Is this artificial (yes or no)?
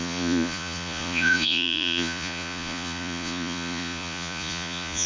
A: yes